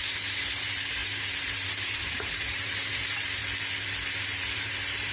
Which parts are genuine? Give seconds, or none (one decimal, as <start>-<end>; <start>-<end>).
3.4-4.1